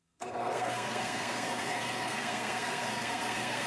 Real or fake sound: fake